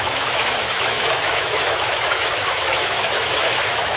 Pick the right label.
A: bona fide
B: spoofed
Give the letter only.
B